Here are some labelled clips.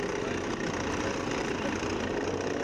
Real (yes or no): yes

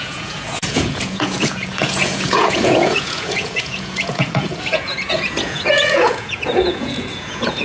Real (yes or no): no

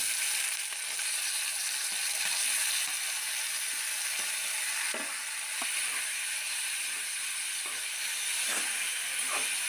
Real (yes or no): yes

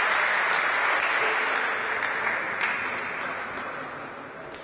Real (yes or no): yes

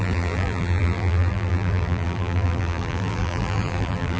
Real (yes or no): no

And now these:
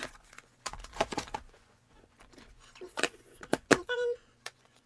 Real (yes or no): no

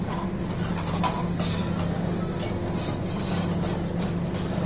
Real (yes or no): yes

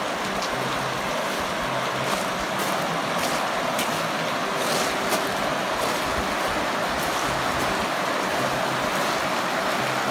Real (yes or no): yes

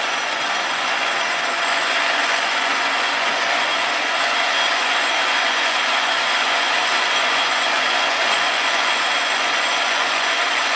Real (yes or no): no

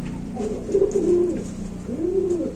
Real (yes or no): yes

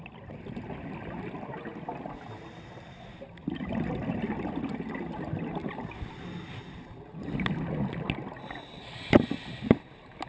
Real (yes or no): yes